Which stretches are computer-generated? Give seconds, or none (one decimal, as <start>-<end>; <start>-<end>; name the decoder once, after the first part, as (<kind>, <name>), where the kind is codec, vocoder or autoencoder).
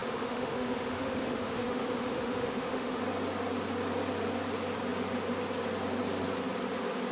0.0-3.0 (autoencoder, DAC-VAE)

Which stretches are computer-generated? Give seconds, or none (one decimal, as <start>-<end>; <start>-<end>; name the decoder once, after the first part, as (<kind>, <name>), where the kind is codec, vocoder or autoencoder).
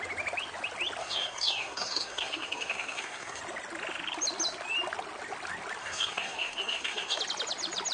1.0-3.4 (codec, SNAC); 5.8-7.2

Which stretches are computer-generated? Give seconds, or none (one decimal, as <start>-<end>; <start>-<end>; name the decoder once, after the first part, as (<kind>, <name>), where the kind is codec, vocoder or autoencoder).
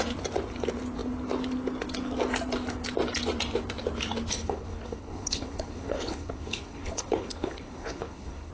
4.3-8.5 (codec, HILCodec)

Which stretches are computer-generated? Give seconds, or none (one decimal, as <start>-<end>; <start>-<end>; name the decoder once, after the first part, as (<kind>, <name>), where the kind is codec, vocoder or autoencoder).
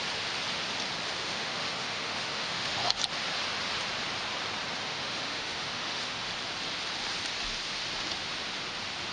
1.2-3.0 (autoencoder, DAC-VAE); 4.9-6.3